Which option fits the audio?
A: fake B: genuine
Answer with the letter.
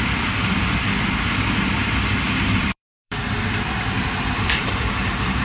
A